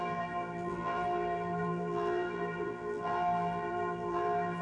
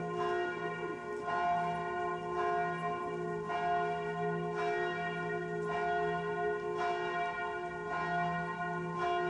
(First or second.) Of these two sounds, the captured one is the second